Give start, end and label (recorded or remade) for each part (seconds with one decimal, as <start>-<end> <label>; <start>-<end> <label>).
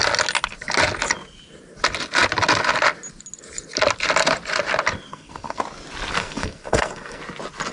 0.0-5.1 recorded; 5.1-5.6 remade; 5.6-6.2 recorded; 6.2-7.2 remade; 7.2-7.7 recorded